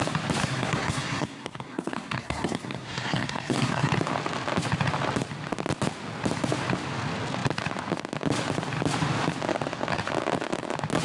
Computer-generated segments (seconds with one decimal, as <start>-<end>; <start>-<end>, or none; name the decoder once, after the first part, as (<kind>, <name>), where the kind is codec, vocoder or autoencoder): 0.4-3.9 (codec, SNAC)